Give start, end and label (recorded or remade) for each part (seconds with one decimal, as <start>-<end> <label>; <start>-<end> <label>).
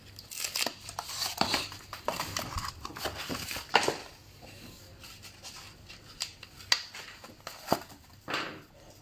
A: 0.0-4.0 recorded; 4.0-4.8 remade; 4.8-9.0 recorded